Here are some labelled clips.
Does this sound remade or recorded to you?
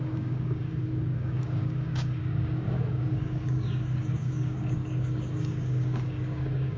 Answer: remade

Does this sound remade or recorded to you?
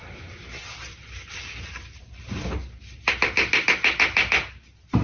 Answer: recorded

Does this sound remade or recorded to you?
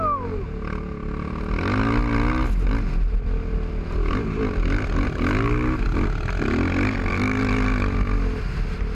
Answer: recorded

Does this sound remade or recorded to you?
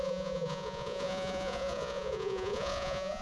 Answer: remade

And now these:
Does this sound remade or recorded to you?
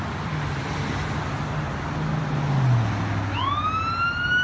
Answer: recorded